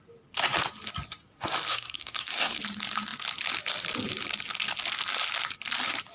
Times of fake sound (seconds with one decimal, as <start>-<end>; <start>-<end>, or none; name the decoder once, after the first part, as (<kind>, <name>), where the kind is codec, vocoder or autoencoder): 1.7-2.6 (codec, SNAC)